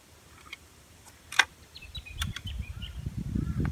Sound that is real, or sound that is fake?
fake